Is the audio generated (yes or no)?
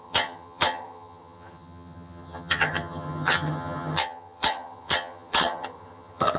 yes